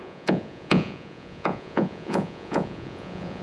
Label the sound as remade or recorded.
remade